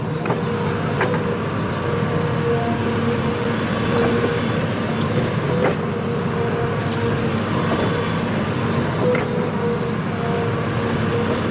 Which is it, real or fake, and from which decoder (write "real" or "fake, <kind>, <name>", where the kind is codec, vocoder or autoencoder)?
real